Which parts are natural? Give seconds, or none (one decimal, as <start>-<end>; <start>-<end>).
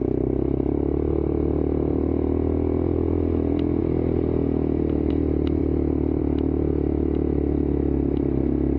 0.0-8.8